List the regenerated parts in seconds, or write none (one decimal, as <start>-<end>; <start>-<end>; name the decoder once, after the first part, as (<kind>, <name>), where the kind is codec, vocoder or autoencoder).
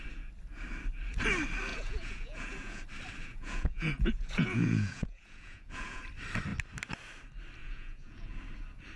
1.7-2.8 (vocoder, Vocos); 3.2-6.0; 7.6-8.4